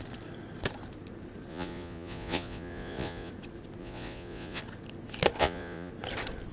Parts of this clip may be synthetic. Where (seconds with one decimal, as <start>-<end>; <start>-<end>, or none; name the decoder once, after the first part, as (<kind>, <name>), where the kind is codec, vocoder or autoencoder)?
1.5-3.3 (vocoder, Vocos); 3.8-4.6; 5.4-5.9